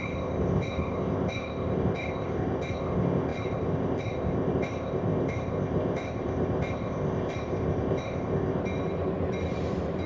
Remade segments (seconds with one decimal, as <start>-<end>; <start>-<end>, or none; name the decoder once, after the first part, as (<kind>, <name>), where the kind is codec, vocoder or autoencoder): 0.0-8.6 (codec, ZipCodec)

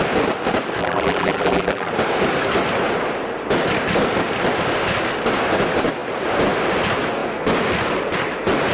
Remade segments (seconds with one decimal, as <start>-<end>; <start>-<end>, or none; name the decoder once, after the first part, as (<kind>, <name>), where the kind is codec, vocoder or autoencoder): 0.8-1.9 (vocoder, BigVGAN v2)

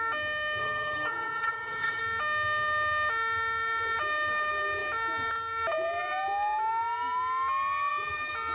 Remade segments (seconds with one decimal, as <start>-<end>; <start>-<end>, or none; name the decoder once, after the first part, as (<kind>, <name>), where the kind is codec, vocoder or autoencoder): 0.6-2.0 (vocoder, HiFi-GAN)

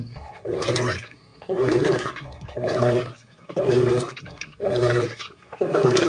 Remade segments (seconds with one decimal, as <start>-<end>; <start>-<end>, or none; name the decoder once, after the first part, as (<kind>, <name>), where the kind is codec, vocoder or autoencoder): 0.0-6.1 (codec, SNAC)

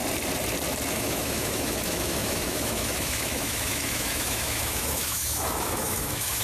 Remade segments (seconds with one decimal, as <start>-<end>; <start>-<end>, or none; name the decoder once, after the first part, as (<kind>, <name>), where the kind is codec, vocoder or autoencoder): 0.9-6.4 (autoencoder, DAC-VAE)

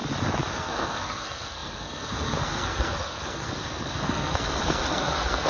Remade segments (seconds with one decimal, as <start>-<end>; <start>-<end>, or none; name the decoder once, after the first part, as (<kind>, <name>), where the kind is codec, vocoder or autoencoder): 0.5-5.5 (codec, SNAC)

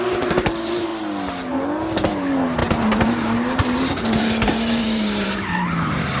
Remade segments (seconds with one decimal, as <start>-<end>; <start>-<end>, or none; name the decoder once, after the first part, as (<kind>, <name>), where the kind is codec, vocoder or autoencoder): 0.0-0.9 (vocoder, BigVGAN v2); 2.1-6.2